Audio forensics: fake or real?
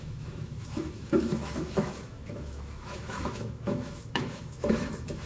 fake